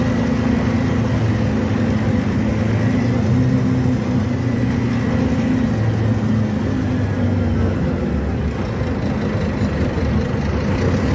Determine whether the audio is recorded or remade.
recorded